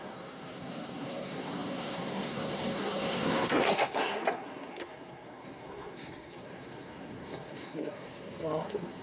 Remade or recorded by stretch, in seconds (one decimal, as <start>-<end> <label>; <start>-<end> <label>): 0.0-9.0 remade